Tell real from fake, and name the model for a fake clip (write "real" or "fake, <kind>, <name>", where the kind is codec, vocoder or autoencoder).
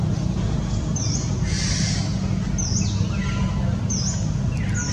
real